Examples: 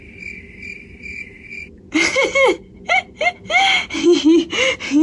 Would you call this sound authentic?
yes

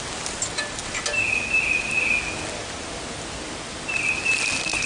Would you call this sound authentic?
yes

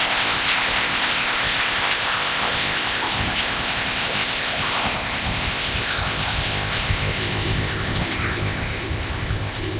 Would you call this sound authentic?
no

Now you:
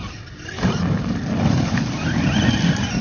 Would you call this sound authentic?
yes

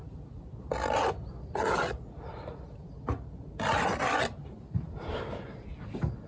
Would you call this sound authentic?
yes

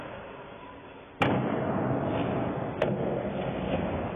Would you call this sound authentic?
yes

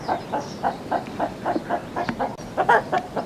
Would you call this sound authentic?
yes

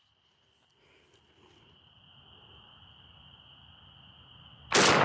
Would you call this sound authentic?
yes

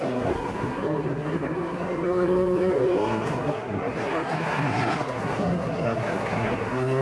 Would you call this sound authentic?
no